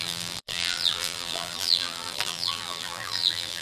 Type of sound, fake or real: fake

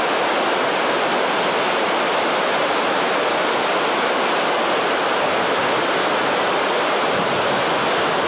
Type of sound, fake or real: fake